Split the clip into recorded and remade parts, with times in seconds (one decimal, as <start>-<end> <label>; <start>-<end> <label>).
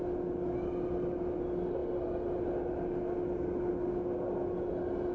0.0-5.1 recorded